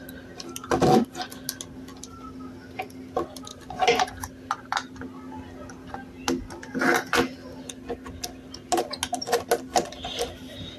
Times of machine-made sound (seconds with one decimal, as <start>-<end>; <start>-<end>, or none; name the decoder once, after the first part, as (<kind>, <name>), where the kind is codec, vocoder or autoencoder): none